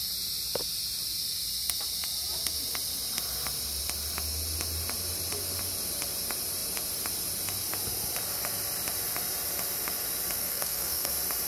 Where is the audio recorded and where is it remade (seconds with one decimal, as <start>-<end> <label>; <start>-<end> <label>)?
0.0-10.4 recorded; 10.4-11.1 remade; 11.1-11.5 recorded